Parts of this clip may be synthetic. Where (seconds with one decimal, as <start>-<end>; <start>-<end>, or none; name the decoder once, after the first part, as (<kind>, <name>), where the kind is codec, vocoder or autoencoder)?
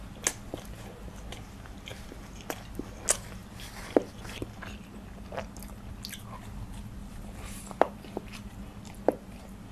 7.0-7.8 (vocoder, BigVGAN v2)